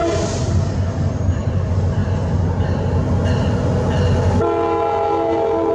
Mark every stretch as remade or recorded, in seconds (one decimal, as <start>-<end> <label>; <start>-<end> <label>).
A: 0.0-5.7 recorded